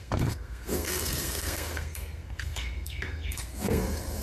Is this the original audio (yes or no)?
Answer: no